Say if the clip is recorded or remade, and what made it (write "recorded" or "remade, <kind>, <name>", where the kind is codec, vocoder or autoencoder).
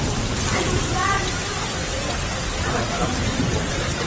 recorded